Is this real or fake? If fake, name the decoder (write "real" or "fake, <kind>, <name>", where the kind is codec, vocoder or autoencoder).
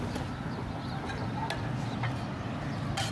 real